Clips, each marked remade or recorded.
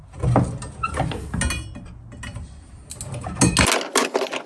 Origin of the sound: recorded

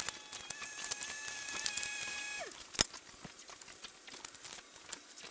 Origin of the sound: recorded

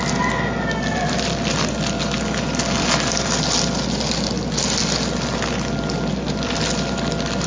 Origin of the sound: recorded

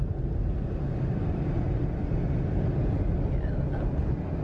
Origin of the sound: recorded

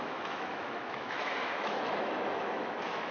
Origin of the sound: remade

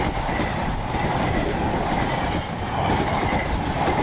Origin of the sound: recorded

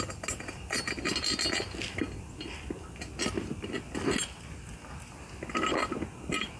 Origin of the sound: recorded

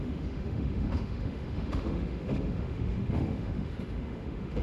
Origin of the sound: remade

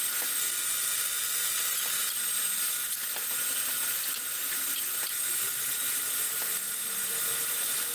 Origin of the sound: recorded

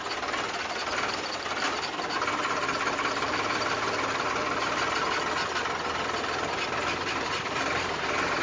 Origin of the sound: recorded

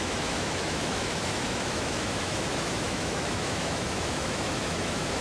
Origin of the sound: remade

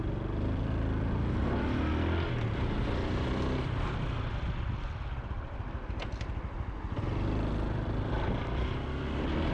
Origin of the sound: recorded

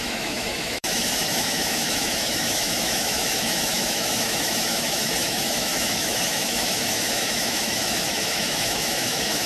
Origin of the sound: remade